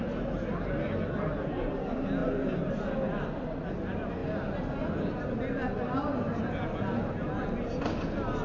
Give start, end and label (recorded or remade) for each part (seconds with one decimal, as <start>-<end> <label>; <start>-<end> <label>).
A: 0.0-8.4 recorded